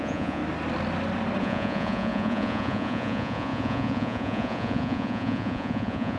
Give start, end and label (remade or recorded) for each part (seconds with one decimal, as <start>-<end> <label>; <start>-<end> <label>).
0.0-0.4 remade; 0.4-1.4 recorded; 1.4-6.2 remade